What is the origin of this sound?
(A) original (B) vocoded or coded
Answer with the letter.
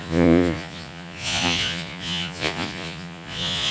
B